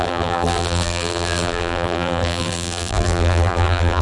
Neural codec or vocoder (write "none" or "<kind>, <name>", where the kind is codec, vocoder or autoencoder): vocoder, BigVGAN v2